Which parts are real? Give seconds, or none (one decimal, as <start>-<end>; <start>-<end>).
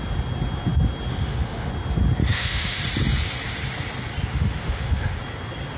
0.0-1.1; 1.7-2.2; 2.8-4.3; 5.2-5.8